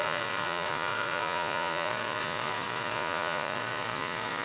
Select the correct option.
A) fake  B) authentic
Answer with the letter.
A